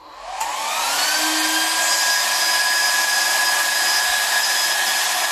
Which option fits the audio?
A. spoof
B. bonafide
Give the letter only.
B